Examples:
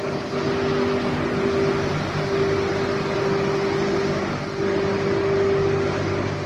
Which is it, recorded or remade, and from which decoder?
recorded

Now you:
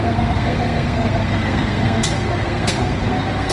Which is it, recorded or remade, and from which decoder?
remade, codec, SNAC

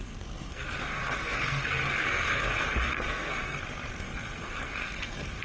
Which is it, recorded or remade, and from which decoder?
remade, codec, SNAC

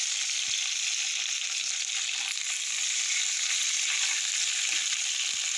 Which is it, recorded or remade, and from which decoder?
recorded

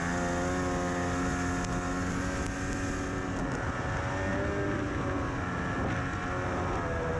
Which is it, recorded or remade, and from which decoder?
recorded